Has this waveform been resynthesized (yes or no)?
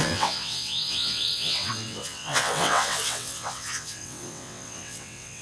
yes